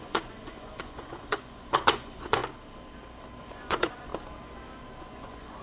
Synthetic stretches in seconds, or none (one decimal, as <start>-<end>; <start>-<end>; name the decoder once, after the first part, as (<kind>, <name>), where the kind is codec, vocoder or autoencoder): 0.0-2.4 (vocoder, Vocos); 3.4-4.1; 5.0-5.6